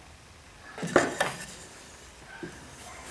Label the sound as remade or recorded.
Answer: recorded